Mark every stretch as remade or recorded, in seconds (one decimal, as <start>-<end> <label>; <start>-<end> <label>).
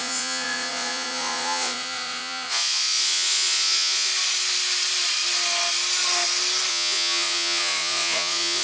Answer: 0.0-4.1 remade; 4.1-6.7 recorded; 6.7-8.6 remade